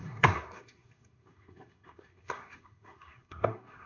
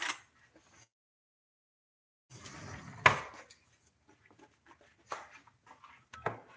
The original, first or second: second